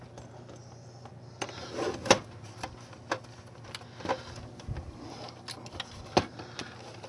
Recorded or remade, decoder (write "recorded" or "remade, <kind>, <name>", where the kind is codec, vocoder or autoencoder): recorded